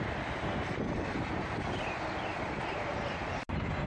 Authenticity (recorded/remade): recorded